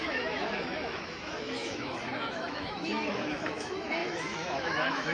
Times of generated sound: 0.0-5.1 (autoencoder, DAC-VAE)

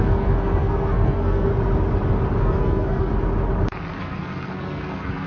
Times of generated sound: 0.0-1.5 (codec, SNAC); 2.4-3.1; 4.0-5.3